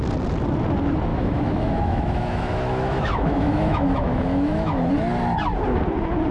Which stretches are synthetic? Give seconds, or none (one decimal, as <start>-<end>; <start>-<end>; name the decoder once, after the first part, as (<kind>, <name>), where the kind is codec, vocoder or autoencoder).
1.1-4.9 (autoencoder, DAC-VAE)